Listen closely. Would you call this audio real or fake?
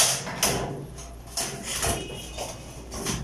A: real